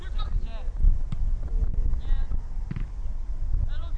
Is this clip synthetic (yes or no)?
no